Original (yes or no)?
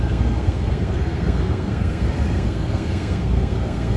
no